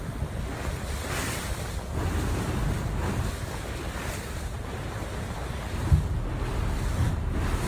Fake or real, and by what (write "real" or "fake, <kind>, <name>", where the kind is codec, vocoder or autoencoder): real